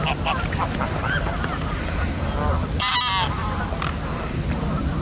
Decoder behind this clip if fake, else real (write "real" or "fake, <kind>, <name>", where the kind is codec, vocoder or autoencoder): real